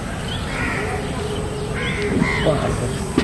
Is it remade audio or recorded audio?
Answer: recorded